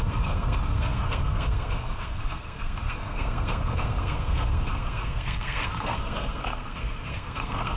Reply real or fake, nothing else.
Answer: fake